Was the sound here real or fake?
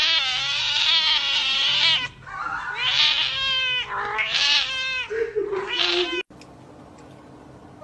real